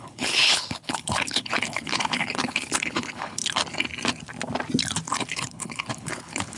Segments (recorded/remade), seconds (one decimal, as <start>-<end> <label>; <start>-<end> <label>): 0.0-3.4 remade; 3.4-5.2 recorded; 5.2-6.6 remade